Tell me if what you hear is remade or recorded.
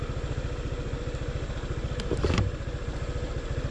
recorded